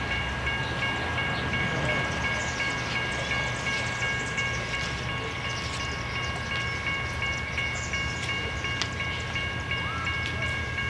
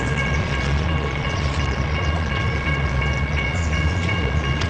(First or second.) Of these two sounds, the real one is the first